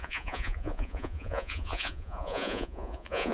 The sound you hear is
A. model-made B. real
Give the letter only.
A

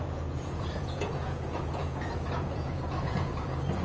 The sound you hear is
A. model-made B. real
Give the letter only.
A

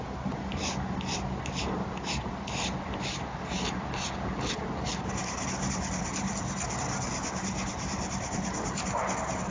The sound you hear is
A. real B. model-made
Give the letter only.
A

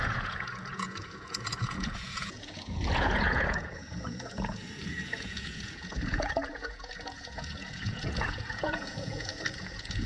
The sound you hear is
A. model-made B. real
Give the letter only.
A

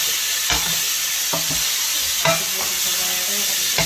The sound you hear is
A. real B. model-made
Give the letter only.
A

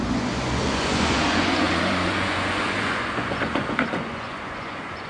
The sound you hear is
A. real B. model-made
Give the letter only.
B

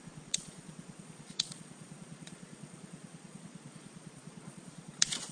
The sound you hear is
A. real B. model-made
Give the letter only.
B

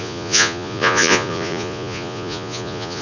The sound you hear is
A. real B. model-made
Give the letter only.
B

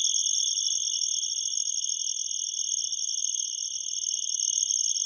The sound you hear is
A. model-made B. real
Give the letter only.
B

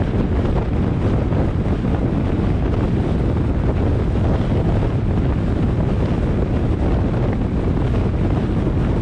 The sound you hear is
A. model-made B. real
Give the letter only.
B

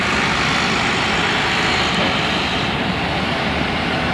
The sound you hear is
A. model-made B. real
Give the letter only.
B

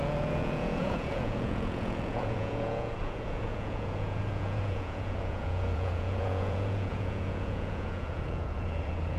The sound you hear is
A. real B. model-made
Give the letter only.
B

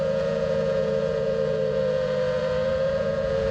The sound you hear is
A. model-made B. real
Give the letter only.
A